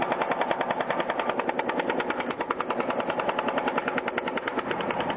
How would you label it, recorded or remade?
recorded